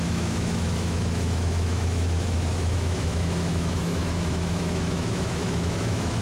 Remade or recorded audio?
remade